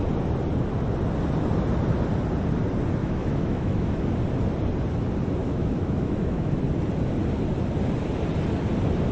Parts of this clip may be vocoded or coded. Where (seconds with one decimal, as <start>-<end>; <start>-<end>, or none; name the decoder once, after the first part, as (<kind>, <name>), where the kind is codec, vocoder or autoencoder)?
3.0-4.0 (autoencoder, DAC-VAE); 5.4-6.5